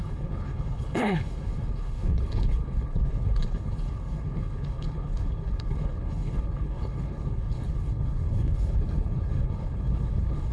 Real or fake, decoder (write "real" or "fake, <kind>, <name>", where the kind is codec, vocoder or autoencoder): fake, codec, HILCodec